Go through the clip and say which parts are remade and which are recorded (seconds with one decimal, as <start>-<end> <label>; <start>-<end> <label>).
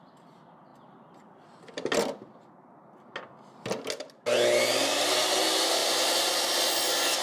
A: 0.0-7.2 recorded